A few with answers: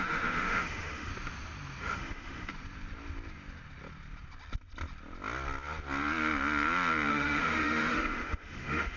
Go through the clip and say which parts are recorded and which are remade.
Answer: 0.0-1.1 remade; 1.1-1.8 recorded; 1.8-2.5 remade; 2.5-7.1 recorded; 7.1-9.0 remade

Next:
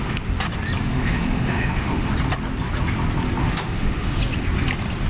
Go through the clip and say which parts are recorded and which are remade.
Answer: 0.0-0.9 recorded; 0.9-2.1 remade; 2.1-3.4 recorded; 3.4-4.2 remade; 4.2-5.1 recorded

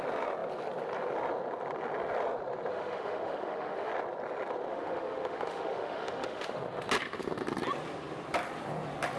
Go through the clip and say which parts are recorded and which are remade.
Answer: 0.0-2.7 recorded; 2.7-3.9 remade; 3.9-4.7 recorded; 4.7-6.6 remade; 6.6-9.2 recorded

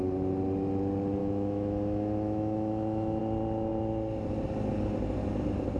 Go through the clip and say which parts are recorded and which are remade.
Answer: 0.0-1.2 recorded; 1.2-3.2 remade; 3.2-5.8 recorded

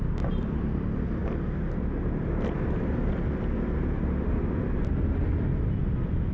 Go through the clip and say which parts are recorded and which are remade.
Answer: 0.0-6.3 recorded

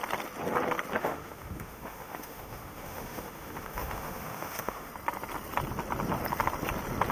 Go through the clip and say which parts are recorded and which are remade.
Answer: 0.0-1.0 recorded; 1.0-4.9 remade; 4.9-7.1 recorded

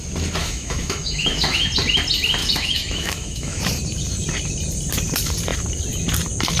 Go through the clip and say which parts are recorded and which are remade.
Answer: 0.0-0.4 recorded; 0.4-1.7 remade; 1.7-2.4 recorded; 2.4-3.6 remade; 3.6-6.6 recorded

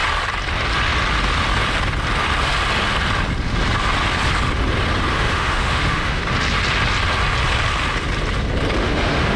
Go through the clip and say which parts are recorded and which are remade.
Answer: 0.0-5.1 recorded; 5.1-6.2 remade; 6.2-8.8 recorded; 8.8-9.4 remade